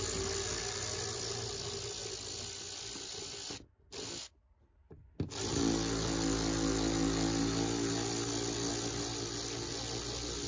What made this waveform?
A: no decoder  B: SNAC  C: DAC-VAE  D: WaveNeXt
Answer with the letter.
A